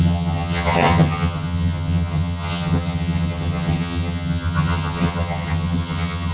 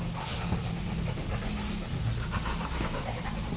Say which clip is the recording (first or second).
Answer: second